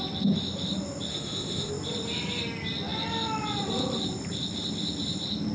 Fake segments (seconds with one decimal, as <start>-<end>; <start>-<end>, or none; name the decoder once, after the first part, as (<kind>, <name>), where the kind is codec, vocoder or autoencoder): 1.1-1.7 (autoencoder, DAC-VAE)